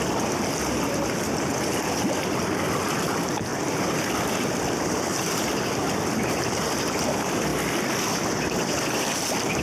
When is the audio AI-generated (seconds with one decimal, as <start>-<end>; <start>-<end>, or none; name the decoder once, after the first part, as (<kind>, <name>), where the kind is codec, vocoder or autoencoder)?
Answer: none